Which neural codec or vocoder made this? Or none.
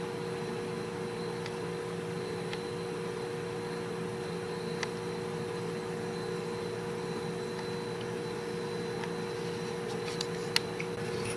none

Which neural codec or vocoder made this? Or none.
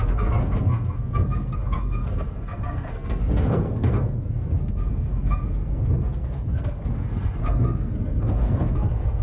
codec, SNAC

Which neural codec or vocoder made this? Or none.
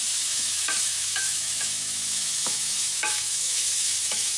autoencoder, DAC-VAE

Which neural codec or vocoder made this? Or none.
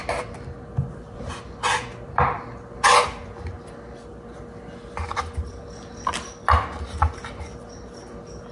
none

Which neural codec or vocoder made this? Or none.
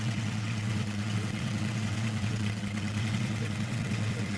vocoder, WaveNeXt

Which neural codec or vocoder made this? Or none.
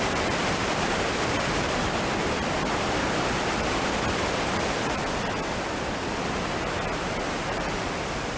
vocoder, BigVGAN v2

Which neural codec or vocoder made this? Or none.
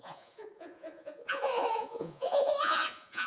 vocoder, Vocos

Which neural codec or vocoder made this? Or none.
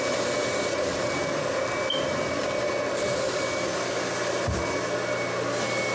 none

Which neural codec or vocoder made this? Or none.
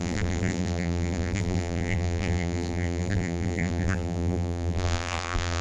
vocoder, BigVGAN v2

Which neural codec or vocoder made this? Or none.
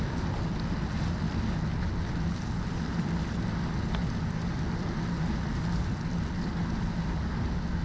none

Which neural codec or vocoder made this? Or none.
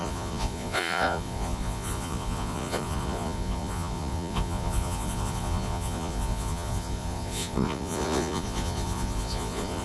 vocoder, Vocos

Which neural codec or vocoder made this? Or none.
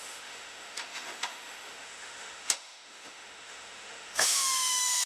autoencoder, DAC-VAE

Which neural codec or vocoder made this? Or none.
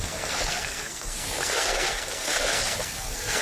codec, SNAC